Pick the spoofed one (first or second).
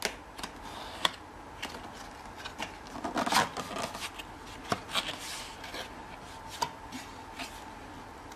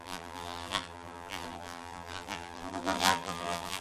second